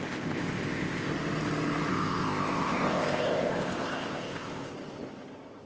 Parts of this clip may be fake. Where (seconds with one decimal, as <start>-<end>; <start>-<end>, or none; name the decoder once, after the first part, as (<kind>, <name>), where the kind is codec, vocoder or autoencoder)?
0.0-1.1 (codec, ZipCodec); 1.9-4.7

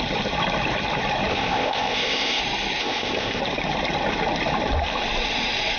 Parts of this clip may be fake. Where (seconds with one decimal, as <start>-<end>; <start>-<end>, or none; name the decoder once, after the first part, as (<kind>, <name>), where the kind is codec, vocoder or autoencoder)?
1.3-2.4 (codec, ZipCodec); 2.8-3.4